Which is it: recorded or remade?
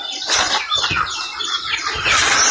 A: recorded